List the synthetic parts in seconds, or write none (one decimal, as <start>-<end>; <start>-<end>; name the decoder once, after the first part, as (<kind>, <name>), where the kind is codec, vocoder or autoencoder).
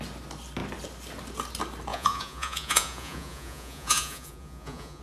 1.9-5.0 (vocoder, Vocos)